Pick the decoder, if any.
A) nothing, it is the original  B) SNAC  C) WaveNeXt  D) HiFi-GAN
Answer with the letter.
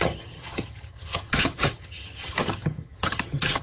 D